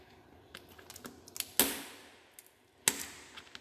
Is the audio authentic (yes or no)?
yes